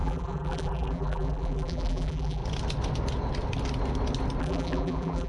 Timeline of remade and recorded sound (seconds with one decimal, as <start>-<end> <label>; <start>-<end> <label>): 0.0-2.4 remade; 2.4-4.4 recorded; 4.4-5.3 remade